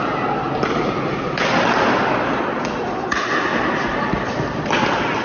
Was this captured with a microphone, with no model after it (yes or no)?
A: yes